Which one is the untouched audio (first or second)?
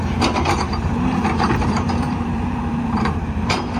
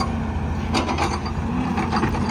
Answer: second